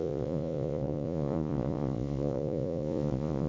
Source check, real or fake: fake